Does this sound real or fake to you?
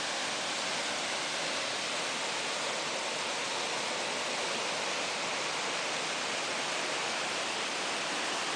real